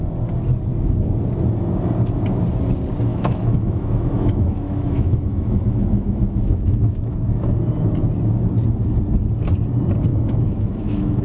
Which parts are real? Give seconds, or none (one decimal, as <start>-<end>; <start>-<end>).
0.0-3.1; 7.6-10.1